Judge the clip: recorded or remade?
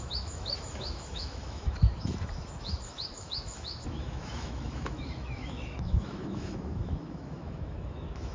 remade